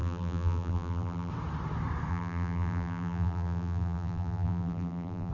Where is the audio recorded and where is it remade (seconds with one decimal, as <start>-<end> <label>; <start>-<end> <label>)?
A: 0.0-1.3 remade; 1.3-2.1 recorded; 2.1-5.3 remade